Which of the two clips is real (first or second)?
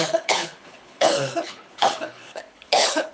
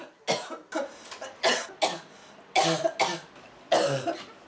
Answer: second